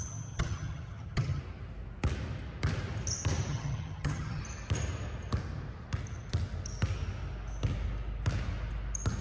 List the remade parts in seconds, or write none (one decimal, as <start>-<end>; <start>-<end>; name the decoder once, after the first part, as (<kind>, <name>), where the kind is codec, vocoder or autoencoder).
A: 0.0-1.4 (vocoder, HiFi-GAN); 3.5-4.4